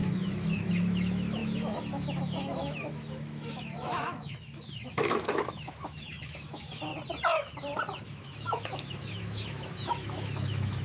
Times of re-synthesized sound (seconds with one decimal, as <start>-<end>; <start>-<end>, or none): 0.0-6.9; 8.0-10.8